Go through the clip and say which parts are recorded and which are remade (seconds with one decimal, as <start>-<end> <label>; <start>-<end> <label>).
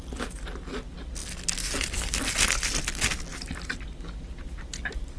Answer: 0.0-3.3 recorded; 3.3-3.9 remade; 3.9-5.2 recorded